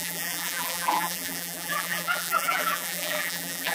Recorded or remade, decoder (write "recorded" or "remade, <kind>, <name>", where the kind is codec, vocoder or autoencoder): remade, vocoder, BigVGAN v2